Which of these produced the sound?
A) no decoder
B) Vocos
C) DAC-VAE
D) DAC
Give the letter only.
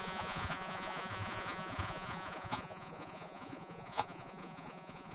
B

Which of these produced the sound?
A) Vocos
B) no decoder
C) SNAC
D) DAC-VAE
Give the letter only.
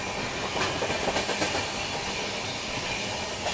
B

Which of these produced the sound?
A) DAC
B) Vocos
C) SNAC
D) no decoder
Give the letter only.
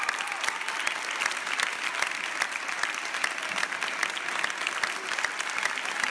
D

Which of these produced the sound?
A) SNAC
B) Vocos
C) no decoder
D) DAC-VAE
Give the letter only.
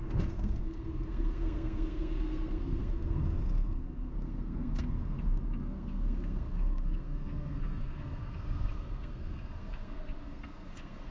A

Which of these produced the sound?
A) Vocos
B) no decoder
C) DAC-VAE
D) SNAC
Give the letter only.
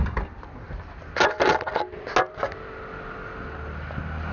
B